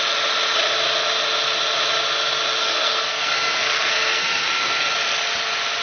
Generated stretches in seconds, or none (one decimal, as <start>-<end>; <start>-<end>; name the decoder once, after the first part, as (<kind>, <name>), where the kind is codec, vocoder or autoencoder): 2.6-4.9 (codec, SNAC)